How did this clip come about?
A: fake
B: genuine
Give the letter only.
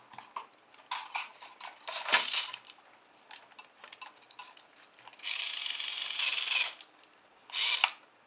B